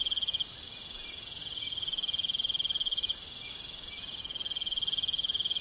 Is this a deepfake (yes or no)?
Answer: no